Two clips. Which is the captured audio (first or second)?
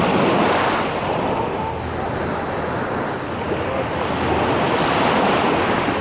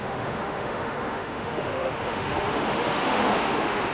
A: first